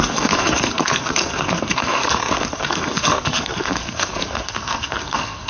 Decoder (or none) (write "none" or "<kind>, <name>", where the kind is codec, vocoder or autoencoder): codec, SNAC